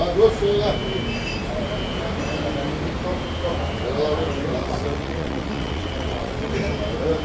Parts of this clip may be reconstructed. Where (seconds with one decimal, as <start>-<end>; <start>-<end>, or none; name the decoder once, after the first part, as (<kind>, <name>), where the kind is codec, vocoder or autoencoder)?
4.6-6.5 (vocoder, WaveNeXt)